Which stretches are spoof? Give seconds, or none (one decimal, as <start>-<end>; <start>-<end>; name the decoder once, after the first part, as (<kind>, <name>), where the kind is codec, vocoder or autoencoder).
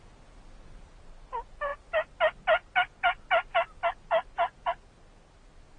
none